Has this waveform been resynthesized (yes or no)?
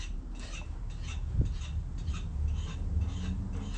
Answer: no